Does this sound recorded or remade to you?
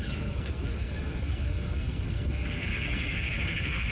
remade